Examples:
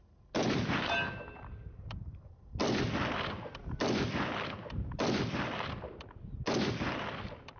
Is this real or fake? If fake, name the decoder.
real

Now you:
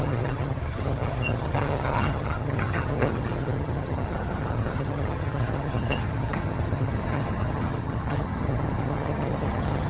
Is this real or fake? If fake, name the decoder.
fake, vocoder, HiFi-GAN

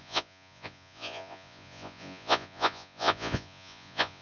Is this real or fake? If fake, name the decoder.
fake, vocoder, Vocos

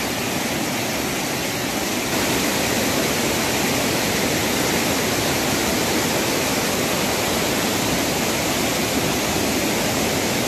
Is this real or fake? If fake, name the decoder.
real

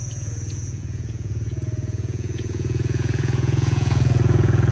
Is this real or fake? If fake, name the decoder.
fake, vocoder, Vocos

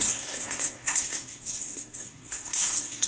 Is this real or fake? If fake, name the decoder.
fake, codec, SNAC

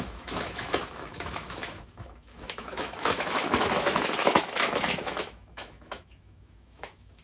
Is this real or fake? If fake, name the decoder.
fake, autoencoder, DAC-VAE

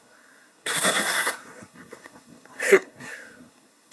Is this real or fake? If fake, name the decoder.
fake, codec, SNAC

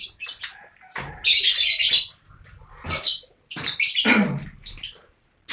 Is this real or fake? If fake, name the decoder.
real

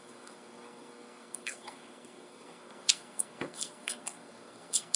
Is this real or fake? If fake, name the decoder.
fake, codec, SNAC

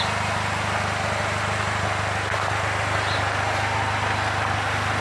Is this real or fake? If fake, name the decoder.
real